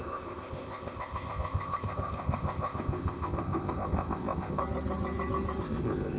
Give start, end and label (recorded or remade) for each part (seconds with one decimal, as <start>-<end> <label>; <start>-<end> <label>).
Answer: 0.0-4.6 remade; 4.6-5.6 recorded; 5.6-6.2 remade